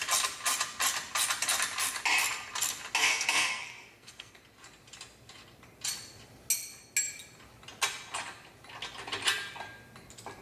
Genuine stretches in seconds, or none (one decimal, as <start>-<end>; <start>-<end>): 0.0-3.0; 4.4-10.4